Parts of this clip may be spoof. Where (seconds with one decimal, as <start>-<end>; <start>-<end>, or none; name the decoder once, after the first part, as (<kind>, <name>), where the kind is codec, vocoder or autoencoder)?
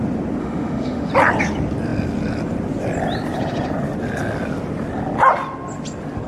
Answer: 0.4-1.1 (autoencoder, DAC-VAE)